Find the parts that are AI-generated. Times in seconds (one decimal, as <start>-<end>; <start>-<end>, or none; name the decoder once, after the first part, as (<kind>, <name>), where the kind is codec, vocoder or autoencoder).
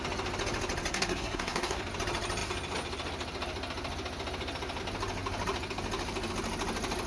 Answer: 0.9-1.8 (codec, SNAC)